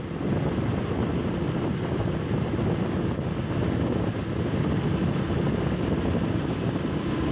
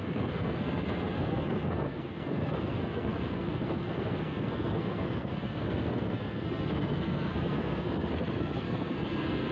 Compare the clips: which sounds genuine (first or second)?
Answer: first